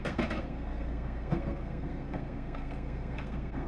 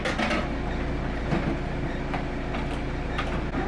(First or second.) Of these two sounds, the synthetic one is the first